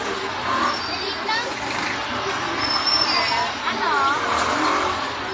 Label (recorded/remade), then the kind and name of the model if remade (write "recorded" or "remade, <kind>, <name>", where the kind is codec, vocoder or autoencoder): recorded